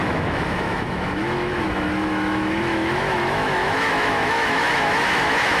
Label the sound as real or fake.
fake